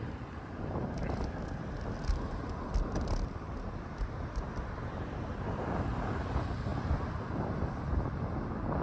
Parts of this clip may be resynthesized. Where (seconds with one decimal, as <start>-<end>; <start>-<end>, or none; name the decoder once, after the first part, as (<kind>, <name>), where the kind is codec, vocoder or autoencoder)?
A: none